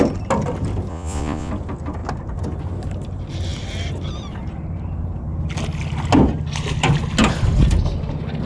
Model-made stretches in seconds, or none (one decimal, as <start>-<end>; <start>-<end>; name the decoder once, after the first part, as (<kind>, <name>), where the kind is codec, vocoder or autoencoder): 0.9-1.5 (vocoder, Vocos)